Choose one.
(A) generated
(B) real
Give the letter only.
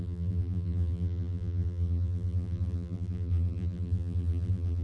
A